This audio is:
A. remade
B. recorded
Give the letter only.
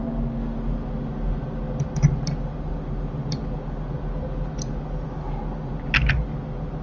B